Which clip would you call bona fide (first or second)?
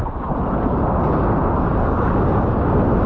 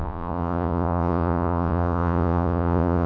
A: first